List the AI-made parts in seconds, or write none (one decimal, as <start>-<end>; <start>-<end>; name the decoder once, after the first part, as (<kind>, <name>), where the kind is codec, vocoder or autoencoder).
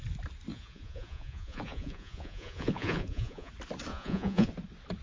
0.5-3.5 (vocoder, Vocos); 3.9-4.5